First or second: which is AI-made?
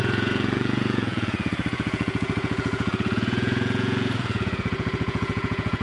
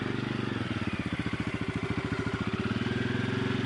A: first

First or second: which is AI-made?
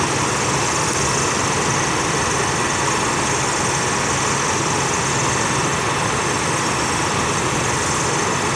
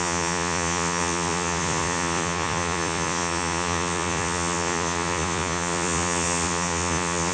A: second